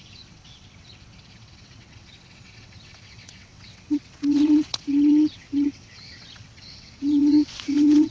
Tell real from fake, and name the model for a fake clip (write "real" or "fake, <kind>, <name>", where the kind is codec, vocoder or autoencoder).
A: fake, vocoder, WaveNeXt